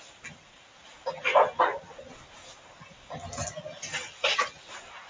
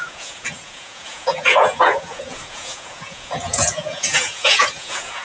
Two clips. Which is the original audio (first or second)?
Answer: first